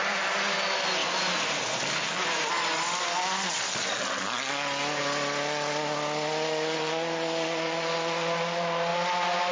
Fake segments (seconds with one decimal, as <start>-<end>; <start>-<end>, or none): none